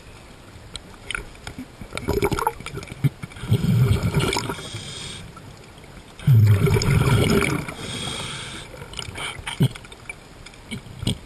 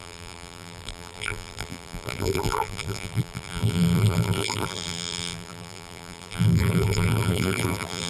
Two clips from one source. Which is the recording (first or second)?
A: first